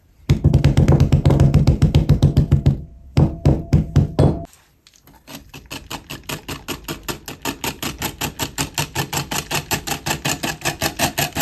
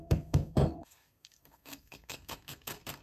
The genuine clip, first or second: first